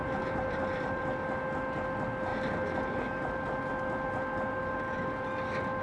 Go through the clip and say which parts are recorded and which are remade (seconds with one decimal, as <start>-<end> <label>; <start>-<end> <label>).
0.0-1.0 remade; 1.0-5.8 recorded